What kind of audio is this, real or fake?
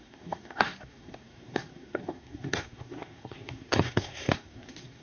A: fake